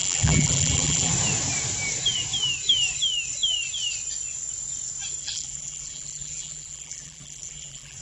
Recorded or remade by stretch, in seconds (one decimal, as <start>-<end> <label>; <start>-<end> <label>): 0.0-1.1 remade; 1.1-5.2 recorded; 5.2-8.0 remade